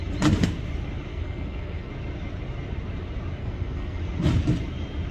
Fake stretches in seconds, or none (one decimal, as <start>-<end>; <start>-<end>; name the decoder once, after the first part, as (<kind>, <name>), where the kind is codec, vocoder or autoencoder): 1.1-1.9 (codec, SNAC); 3.4-4.0